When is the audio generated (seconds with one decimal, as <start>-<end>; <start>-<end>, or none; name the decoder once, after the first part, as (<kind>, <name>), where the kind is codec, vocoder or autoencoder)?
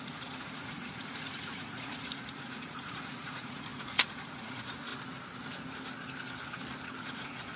0.0-4.9 (vocoder, Vocos); 7.0-7.6